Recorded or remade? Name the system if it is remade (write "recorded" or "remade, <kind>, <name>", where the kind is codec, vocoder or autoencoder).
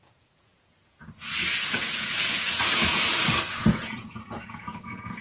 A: remade, vocoder, Vocos